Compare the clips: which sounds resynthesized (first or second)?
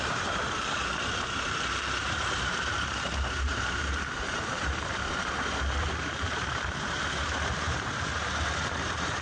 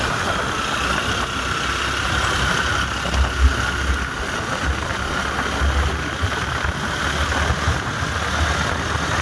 first